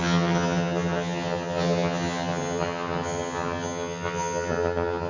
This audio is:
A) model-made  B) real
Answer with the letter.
A